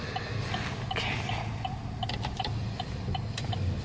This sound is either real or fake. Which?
real